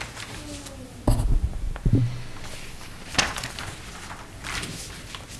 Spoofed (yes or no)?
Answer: no